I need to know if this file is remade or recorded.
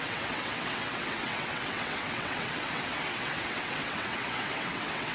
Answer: remade